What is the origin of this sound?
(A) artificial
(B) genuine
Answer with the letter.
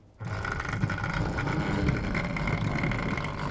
B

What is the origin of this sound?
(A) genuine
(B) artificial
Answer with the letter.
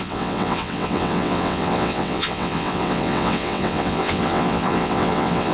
B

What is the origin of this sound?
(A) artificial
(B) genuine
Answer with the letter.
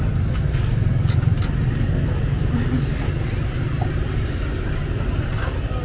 B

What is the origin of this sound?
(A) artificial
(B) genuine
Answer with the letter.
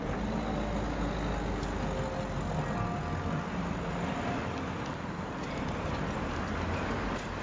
B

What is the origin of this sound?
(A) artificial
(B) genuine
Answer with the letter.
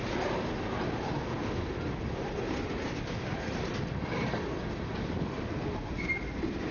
B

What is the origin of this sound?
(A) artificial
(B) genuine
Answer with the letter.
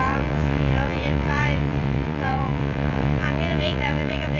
A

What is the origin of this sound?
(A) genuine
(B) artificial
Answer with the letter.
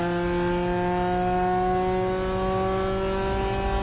A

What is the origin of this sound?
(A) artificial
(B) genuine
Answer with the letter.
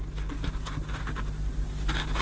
B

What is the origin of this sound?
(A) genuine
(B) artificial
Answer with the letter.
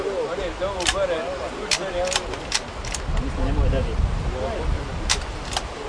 A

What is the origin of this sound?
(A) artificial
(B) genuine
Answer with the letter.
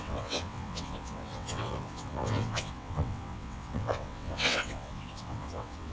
A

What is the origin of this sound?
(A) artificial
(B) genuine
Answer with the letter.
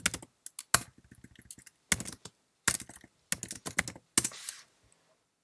B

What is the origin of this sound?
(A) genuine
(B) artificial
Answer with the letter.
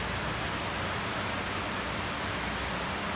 A